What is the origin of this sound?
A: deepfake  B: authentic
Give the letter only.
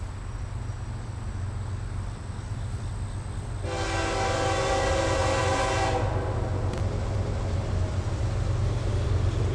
B